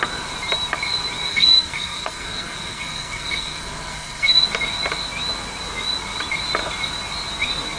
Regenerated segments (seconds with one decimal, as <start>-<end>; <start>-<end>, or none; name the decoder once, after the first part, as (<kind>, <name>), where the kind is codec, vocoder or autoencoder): 1.3-4.4 (codec, SNAC)